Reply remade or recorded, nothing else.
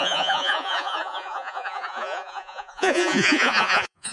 remade